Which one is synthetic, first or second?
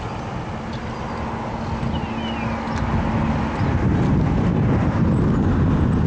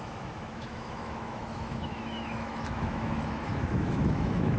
second